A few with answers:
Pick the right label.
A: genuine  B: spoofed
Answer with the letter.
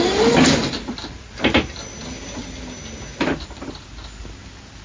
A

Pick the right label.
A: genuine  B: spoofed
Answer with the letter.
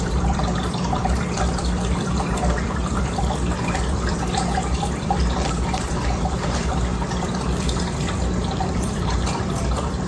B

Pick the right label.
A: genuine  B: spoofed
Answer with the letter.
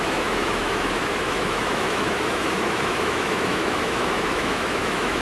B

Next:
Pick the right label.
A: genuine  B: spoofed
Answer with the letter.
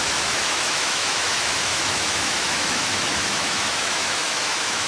B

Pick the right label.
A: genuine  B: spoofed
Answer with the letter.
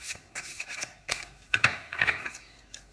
B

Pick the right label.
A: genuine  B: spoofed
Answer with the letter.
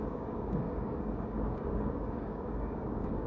B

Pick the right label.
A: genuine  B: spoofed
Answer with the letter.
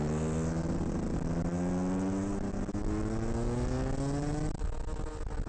A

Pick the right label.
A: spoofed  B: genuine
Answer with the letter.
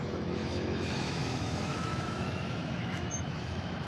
A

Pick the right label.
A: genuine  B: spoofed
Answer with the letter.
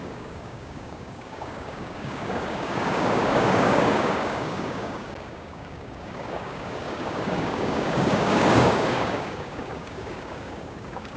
B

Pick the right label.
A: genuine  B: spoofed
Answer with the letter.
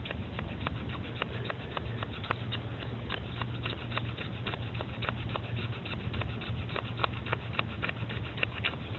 A